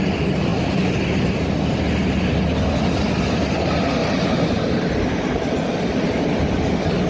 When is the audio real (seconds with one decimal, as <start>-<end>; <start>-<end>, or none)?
0.0-7.1